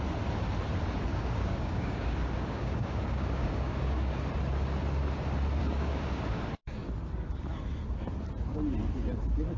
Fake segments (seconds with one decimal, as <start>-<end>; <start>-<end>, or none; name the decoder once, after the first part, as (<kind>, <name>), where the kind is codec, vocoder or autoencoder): 1.1-4.1 (codec, DAC); 5.6-6.4